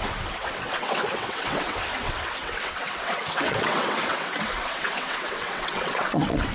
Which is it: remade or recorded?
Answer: remade